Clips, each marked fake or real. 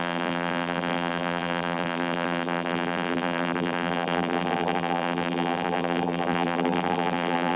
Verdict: fake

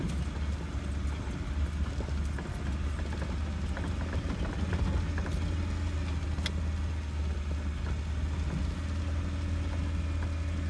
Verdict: real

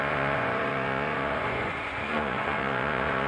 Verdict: fake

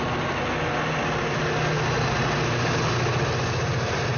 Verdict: real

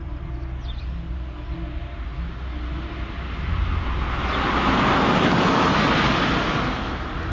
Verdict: real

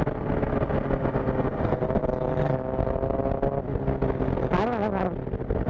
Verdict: real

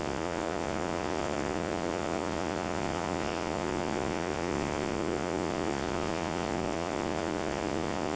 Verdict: fake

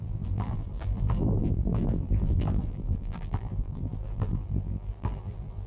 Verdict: fake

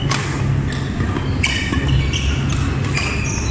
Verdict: real